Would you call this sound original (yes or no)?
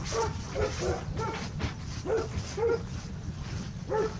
yes